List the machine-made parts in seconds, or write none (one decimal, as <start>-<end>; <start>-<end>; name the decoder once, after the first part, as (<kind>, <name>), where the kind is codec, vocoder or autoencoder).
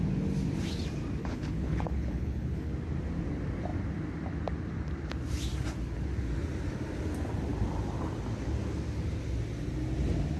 1.2-2.7 (codec, HILCodec)